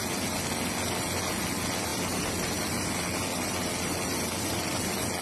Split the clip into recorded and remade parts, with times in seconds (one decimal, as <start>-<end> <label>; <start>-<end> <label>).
0.0-5.2 recorded